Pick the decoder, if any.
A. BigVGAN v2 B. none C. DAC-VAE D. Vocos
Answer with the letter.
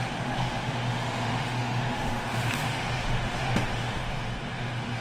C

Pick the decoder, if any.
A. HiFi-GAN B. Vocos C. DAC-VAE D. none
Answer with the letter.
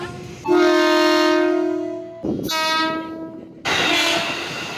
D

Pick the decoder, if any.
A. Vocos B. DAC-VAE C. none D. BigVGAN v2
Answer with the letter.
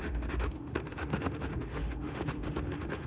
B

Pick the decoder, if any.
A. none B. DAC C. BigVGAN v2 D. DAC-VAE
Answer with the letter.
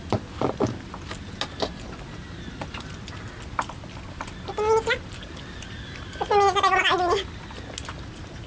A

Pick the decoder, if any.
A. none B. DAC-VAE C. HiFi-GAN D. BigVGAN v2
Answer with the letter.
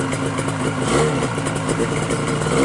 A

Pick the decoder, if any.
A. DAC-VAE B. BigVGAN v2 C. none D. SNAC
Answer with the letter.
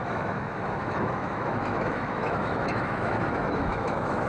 A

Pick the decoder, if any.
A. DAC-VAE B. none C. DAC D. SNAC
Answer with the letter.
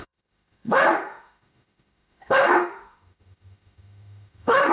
A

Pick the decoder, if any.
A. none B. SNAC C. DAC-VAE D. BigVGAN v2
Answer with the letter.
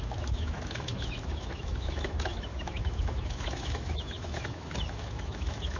C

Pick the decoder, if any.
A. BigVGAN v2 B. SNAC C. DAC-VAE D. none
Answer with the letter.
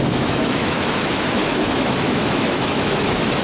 C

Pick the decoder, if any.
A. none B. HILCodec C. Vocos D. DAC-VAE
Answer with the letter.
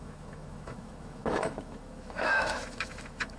D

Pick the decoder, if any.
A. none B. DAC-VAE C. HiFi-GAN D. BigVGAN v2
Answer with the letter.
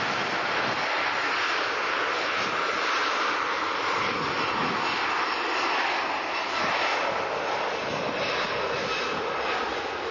A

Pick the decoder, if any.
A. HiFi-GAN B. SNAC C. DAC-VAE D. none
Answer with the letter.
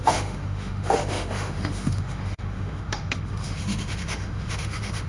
C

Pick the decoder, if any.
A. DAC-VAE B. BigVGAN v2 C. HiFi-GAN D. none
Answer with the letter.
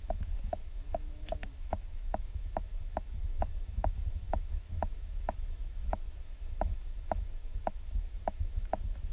A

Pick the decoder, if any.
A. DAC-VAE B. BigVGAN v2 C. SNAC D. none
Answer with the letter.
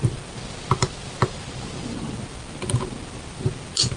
D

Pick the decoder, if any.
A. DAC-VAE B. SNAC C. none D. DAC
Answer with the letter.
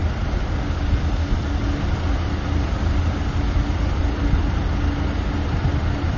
C